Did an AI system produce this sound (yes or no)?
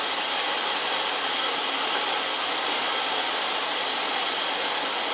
no